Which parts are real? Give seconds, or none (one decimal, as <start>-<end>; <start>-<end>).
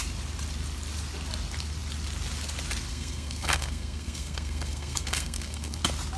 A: 0.0-2.9; 5.8-6.2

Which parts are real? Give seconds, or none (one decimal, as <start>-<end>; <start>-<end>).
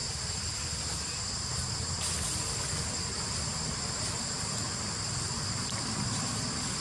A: 0.0-6.8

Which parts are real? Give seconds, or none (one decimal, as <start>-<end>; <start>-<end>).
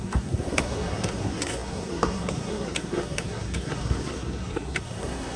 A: none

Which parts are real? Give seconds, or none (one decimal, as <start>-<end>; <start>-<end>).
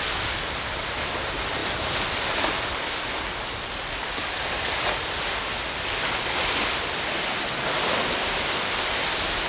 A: 0.0-9.5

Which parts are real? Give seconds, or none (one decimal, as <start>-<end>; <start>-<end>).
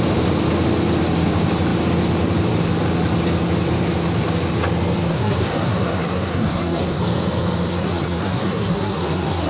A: 0.0-5.1; 7.0-7.7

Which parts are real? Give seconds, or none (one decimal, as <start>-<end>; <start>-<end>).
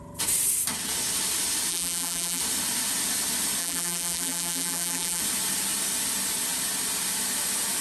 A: 0.0-1.7; 2.4-3.6; 5.2-7.8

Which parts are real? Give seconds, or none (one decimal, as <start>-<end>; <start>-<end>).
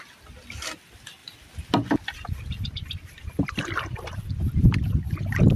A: 0.0-5.6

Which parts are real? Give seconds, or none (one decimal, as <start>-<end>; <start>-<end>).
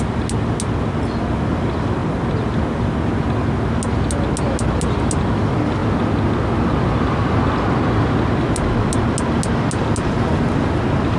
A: 0.0-11.2